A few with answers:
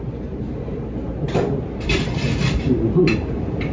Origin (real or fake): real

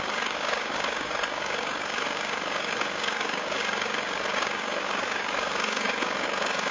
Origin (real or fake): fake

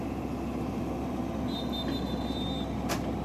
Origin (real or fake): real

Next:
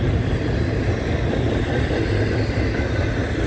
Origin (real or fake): real